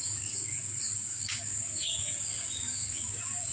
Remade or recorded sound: remade